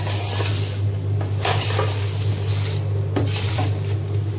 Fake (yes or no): yes